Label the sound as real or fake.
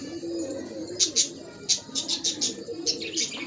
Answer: real